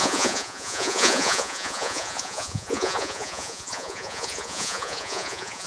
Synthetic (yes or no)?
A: yes